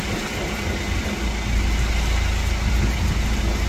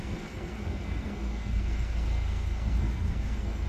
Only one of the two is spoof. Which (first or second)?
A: second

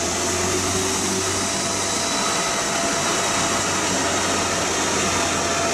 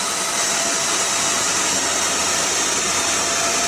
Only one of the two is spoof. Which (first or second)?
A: second